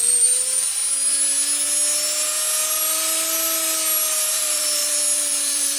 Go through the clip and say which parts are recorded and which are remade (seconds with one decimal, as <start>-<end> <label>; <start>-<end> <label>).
0.0-0.8 remade; 0.8-4.3 recorded; 4.3-5.8 remade